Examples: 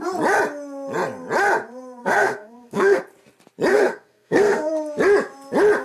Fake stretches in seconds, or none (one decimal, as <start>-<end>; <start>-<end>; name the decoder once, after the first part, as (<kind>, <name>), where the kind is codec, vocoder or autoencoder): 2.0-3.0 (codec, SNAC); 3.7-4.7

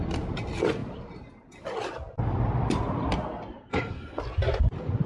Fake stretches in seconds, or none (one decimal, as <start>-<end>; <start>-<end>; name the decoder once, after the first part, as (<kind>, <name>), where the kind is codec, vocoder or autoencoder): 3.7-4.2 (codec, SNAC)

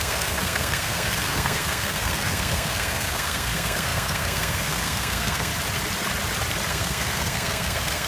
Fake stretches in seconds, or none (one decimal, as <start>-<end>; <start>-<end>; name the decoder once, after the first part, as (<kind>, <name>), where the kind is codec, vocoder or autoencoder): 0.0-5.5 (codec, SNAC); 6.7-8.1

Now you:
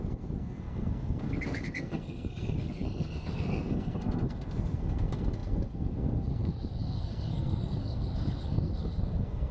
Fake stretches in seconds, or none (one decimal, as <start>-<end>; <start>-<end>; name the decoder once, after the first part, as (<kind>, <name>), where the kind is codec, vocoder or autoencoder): 0.0-9.5 (codec, SNAC)

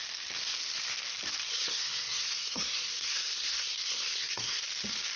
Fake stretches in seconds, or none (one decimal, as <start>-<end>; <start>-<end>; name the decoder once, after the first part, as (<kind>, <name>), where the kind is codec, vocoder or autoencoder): 1.5-4.6 (codec, SNAC)

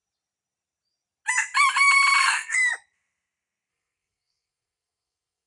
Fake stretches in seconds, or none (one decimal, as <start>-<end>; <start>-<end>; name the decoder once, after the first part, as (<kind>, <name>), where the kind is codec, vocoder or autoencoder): 2.2-2.7 (codec, SNAC); 3.7-5.5